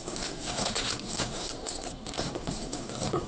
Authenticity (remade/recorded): remade